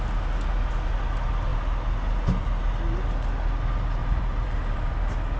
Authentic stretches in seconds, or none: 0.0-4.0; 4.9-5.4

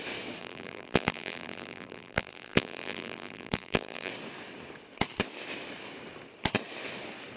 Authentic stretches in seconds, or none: 0.0-0.4; 4.1-7.4

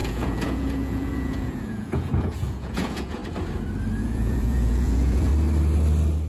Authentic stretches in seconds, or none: 3.2-4.0; 5.3-6.3